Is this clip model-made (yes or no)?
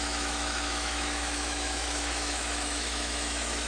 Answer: yes